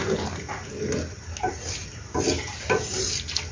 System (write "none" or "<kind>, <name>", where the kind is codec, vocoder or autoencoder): none